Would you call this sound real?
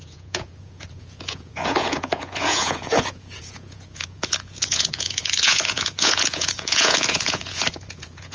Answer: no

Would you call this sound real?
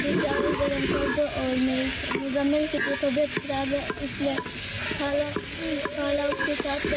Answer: yes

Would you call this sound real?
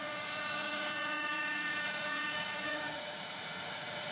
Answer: no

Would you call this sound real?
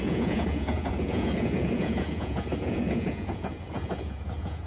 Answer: no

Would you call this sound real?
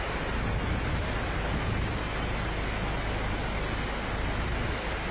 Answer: yes